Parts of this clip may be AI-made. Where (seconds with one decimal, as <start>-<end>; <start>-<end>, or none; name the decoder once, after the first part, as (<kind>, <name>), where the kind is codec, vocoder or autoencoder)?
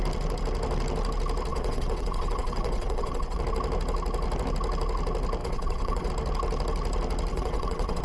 1.5-3.4 (vocoder, WaveNeXt); 5.4-6.1; 7.3-8.0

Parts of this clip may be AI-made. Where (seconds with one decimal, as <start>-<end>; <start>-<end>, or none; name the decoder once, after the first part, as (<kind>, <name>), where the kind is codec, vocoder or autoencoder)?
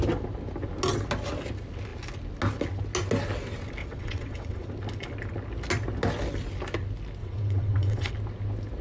3.8-4.7 (vocoder, WaveNeXt); 7.2-8.1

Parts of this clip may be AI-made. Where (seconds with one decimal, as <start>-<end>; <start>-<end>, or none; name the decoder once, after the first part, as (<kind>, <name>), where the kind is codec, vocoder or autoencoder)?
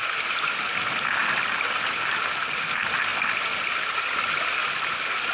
none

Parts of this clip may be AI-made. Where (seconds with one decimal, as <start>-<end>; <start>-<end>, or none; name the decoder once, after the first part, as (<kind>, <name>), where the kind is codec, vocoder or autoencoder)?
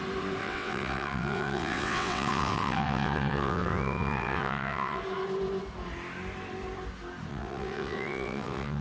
0.4-5.0 (vocoder, WaveNeXt); 7.3-8.8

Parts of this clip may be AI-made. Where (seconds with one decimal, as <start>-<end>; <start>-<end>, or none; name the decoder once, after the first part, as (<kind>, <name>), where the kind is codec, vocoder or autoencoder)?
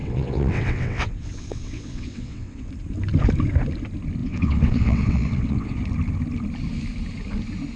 0.0-2.7 (vocoder, WaveNeXt); 4.2-5.8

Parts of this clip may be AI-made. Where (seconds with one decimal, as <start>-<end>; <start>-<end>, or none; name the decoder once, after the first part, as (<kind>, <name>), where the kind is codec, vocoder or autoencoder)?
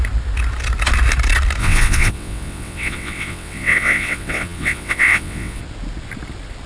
1.6-5.6 (vocoder, WaveNeXt)